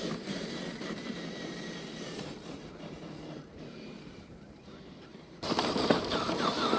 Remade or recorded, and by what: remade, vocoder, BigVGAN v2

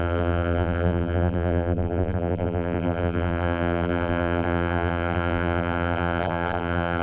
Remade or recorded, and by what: remade, vocoder, BigVGAN v2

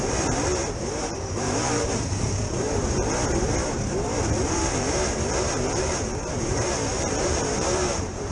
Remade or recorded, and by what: remade, vocoder, BigVGAN v2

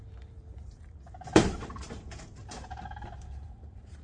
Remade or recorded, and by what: remade, vocoder, BigVGAN v2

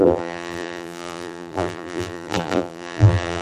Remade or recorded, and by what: remade, vocoder, BigVGAN v2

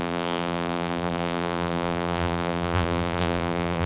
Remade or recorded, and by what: remade, vocoder, BigVGAN v2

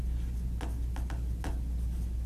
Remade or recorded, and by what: recorded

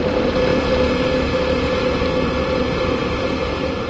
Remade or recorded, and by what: remade, vocoder, BigVGAN v2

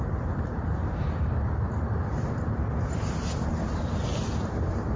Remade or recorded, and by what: remade, vocoder, BigVGAN v2